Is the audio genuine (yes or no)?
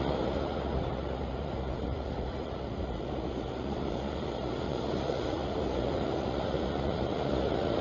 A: no